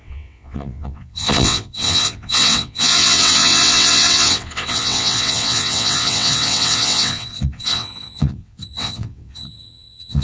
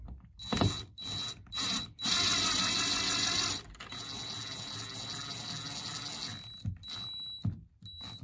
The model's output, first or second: first